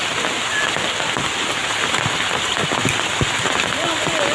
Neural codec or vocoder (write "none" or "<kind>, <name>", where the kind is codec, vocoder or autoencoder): none